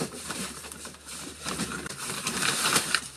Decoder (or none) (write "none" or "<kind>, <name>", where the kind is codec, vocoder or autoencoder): vocoder, BigVGAN v2